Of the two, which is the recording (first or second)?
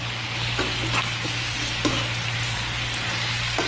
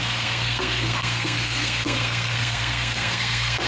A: first